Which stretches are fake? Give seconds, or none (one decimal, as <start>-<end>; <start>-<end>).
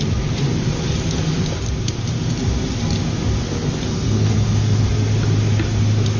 3.4-4.9